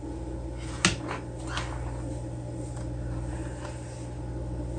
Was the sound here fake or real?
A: real